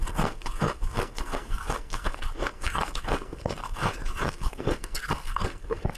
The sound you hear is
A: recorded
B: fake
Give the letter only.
B